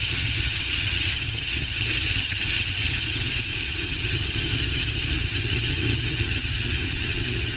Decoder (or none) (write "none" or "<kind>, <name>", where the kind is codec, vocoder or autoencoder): vocoder, HiFi-GAN